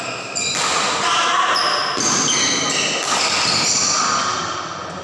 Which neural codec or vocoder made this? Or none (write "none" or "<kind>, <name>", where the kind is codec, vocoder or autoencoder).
none